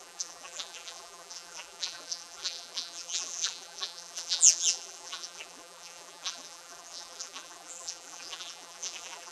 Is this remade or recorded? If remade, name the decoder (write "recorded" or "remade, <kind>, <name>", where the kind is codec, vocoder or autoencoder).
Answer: remade, vocoder, BigVGAN v2